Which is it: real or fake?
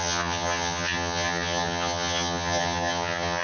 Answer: fake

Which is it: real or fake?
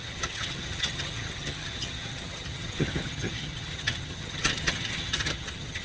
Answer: fake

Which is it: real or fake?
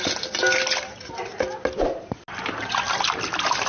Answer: real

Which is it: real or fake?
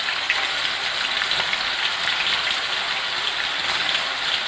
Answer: real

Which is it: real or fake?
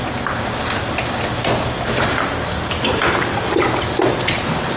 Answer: real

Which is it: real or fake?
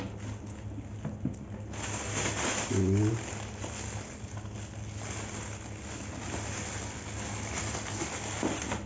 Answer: real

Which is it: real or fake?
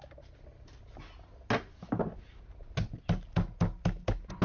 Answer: real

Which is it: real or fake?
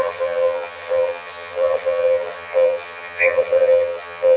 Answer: fake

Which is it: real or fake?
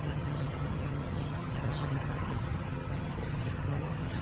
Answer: fake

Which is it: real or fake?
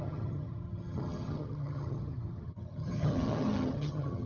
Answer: fake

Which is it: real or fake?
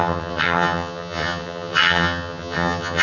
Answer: fake